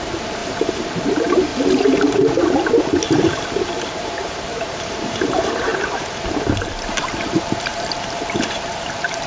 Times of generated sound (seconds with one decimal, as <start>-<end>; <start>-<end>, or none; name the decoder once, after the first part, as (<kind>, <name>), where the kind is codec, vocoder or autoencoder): 0.0-1.5 (vocoder, BigVGAN v2); 2.8-9.3